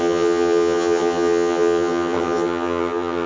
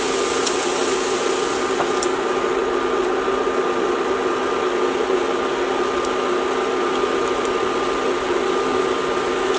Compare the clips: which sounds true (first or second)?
second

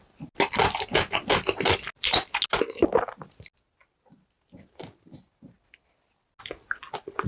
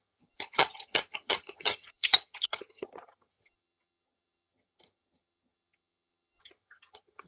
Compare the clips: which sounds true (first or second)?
first